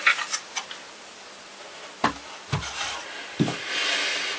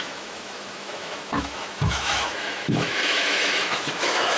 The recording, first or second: first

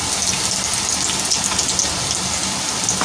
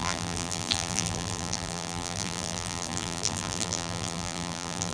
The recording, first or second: first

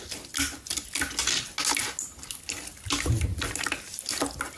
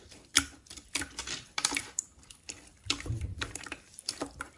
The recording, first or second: first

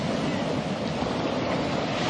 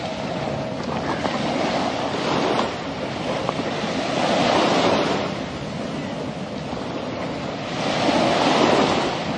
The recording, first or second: second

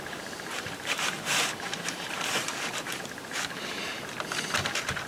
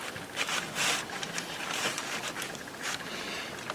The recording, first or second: second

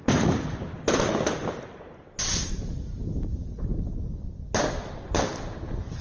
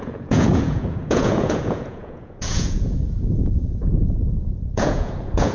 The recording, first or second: first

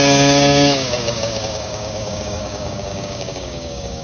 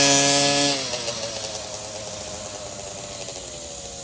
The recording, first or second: second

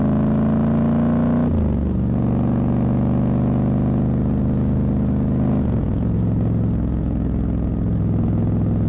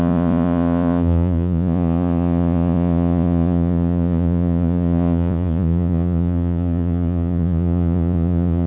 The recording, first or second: first